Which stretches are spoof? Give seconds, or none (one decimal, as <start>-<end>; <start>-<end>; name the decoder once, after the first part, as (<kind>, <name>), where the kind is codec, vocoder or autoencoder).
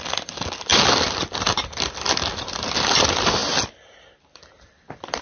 0.0-3.4 (vocoder, BigVGAN v2); 4.2-5.2